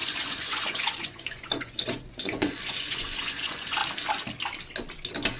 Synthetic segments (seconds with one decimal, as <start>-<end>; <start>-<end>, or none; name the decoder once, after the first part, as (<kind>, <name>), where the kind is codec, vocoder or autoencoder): 0.0-3.8 (vocoder, Vocos)